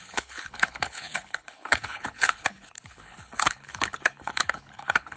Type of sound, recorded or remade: remade